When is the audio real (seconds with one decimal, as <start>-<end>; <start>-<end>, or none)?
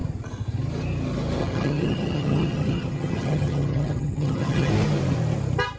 0.0-1.4; 4.7-5.8